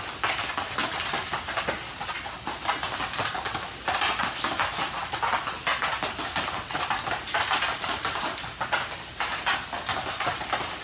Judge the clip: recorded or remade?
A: recorded